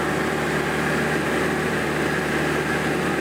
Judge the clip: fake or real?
real